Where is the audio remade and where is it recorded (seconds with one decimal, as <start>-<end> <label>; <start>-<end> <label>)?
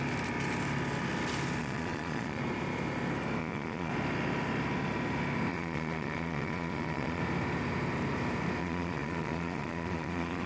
0.0-1.6 recorded; 1.6-2.4 remade; 2.4-3.4 recorded; 3.4-3.9 remade; 3.9-5.5 recorded; 5.5-7.2 remade; 7.2-8.6 recorded; 8.6-10.5 remade